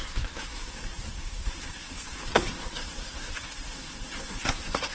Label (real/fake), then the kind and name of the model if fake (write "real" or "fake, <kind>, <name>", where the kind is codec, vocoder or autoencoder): fake, codec, SNAC